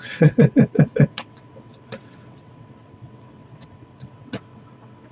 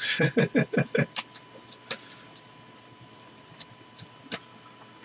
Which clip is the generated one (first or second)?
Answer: first